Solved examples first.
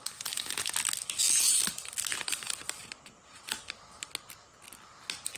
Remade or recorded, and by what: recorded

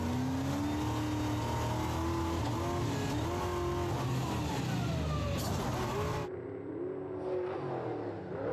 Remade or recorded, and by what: recorded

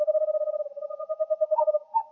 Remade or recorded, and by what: recorded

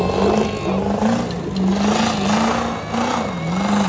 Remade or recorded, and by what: recorded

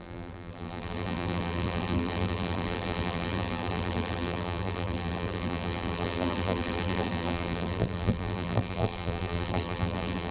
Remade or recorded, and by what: remade, vocoder, BigVGAN v2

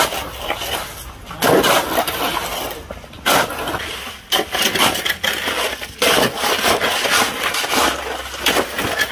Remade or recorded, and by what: recorded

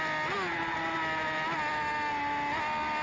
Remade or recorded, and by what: recorded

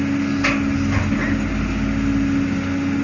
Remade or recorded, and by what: recorded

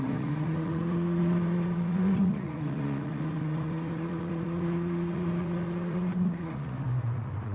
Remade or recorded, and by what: remade, vocoder, Vocos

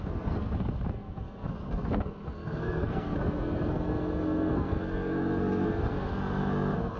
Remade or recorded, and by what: remade, codec, SNAC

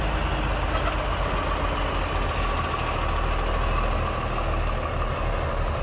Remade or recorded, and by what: recorded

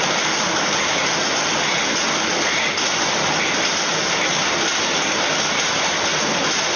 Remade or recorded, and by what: recorded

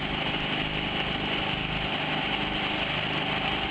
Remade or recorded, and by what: recorded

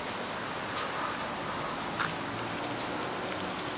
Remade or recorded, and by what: recorded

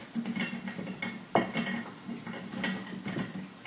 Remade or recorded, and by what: recorded